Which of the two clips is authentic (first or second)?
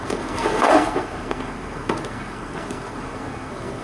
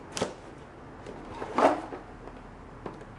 second